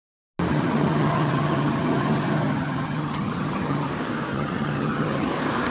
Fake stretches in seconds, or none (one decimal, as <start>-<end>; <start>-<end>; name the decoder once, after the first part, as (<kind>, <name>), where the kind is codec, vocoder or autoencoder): 0.5-3.9 (vocoder, HiFi-GAN); 4.3-5.3